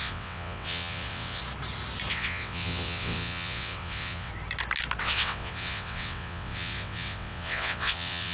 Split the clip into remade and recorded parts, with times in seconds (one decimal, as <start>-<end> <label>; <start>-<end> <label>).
0.0-1.4 remade; 1.4-2.1 recorded; 2.1-4.3 remade; 4.3-5.0 recorded; 5.0-8.3 remade